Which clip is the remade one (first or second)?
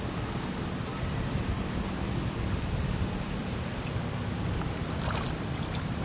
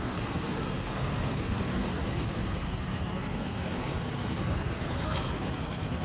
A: second